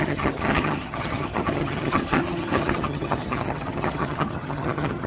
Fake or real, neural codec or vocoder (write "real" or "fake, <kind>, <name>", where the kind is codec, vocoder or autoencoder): fake, vocoder, HiFi-GAN